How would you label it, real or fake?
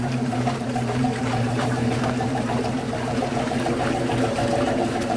fake